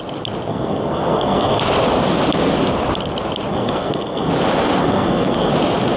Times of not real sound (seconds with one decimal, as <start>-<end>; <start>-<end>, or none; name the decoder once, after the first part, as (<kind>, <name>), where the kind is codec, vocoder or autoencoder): 0.5-1.6 (codec, SNAC); 3.5-4.3; 4.8-5.5